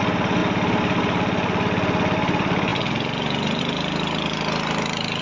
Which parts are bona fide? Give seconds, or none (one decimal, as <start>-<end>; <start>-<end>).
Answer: 0.0-5.2